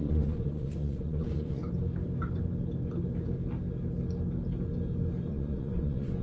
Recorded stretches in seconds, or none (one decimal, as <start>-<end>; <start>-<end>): 1.6-5.3